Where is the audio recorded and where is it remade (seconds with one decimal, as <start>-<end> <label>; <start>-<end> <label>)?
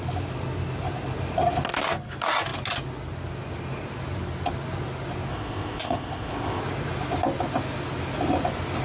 0.0-5.3 recorded; 5.3-6.6 remade; 6.6-8.8 recorded